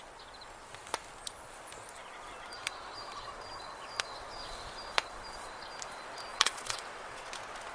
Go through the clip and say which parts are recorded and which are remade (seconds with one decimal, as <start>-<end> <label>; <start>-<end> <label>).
0.0-6.3 recorded; 6.3-7.3 remade; 7.3-7.7 recorded